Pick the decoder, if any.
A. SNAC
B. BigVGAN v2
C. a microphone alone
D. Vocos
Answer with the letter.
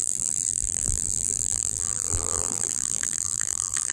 B